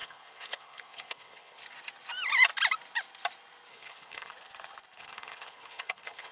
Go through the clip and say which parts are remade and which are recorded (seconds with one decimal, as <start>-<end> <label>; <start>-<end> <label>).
0.0-1.6 remade; 1.6-3.7 recorded; 3.7-4.3 remade; 4.3-5.0 recorded; 5.0-6.3 remade